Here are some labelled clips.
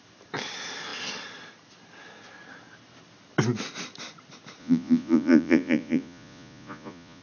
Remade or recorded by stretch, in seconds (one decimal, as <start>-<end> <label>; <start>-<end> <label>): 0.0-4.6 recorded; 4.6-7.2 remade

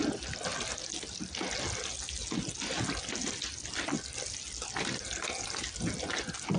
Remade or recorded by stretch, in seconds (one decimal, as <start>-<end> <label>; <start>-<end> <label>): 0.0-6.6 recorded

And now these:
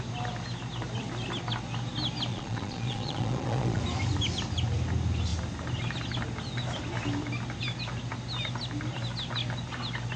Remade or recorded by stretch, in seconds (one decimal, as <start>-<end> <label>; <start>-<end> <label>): 0.0-2.3 recorded; 2.3-3.8 remade; 3.8-10.2 recorded

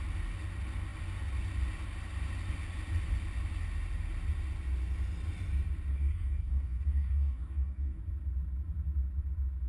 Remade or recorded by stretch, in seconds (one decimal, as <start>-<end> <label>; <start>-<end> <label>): 0.0-5.9 recorded; 5.9-8.0 remade; 8.0-9.7 recorded

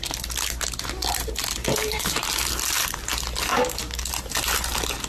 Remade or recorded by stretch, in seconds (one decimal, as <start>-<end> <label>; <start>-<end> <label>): 0.0-1.6 recorded; 1.6-2.1 remade; 2.1-3.5 recorded; 3.5-4.1 remade; 4.1-5.1 recorded